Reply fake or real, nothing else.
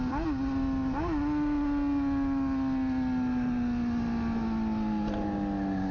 real